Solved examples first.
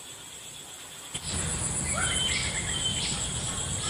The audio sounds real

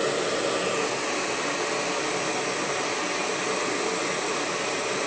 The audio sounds real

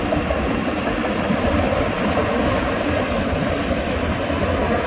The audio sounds fake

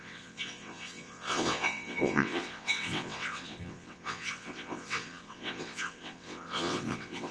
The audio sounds fake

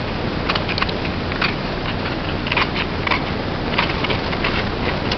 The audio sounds real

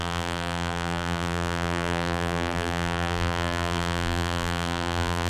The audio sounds fake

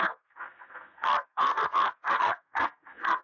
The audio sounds fake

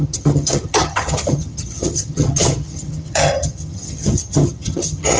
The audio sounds fake